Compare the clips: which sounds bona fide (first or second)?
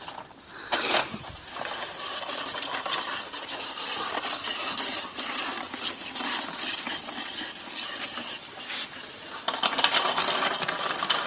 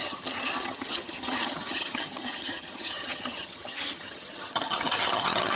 first